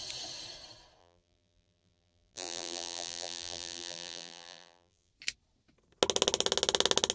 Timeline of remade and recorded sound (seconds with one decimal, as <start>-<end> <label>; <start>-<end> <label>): 0.0-1.0 recorded; 1.0-5.1 remade; 5.1-7.1 recorded